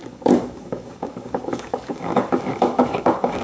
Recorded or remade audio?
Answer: remade